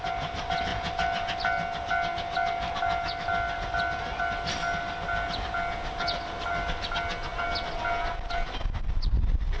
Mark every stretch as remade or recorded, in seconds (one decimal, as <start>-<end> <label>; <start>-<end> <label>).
0.0-9.6 recorded